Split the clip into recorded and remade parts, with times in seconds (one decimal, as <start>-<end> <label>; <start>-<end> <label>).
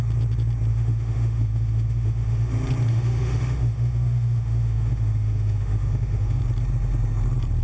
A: 0.0-0.7 recorded; 0.7-2.5 remade; 2.5-2.9 recorded; 2.9-6.4 remade; 6.4-7.6 recorded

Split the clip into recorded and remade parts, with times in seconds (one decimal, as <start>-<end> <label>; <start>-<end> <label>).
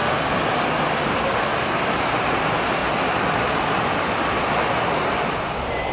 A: 0.0-5.9 recorded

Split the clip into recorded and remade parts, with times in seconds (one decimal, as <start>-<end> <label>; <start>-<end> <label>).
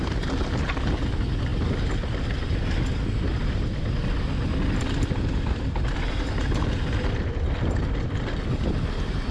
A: 0.0-9.3 recorded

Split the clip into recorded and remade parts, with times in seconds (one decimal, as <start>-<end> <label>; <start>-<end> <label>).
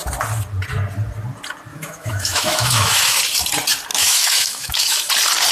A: 0.0-1.7 recorded; 1.7-3.2 remade; 3.2-3.9 recorded; 3.9-5.1 remade; 5.1-5.5 recorded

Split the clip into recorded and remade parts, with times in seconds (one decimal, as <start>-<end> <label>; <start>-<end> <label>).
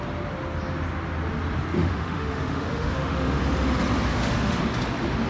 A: 0.0-1.8 recorded; 1.8-3.4 remade; 3.4-4.1 recorded; 4.1-4.6 remade; 4.6-5.3 recorded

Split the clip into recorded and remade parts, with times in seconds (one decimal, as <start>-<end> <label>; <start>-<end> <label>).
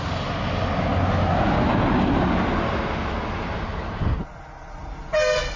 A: 0.0-5.6 recorded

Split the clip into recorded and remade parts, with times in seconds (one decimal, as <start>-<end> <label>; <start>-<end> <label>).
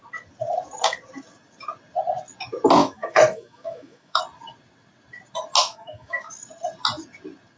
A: 0.0-2.8 recorded; 2.8-4.2 remade; 4.2-5.6 recorded; 5.6-6.3 remade; 6.3-7.6 recorded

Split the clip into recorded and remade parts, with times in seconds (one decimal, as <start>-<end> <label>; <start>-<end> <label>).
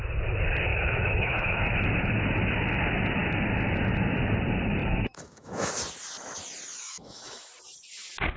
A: 0.0-0.7 recorded; 0.7-1.6 remade; 1.6-4.8 recorded; 4.8-5.7 remade; 5.7-6.8 recorded; 6.8-7.5 remade; 7.5-8.4 recorded